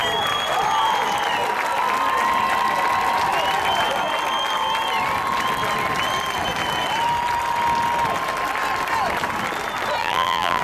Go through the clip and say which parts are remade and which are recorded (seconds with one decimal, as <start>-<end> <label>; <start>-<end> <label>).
0.0-10.0 recorded; 10.0-10.6 remade